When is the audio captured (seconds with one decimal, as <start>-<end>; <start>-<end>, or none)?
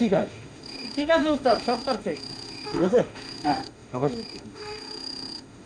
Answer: none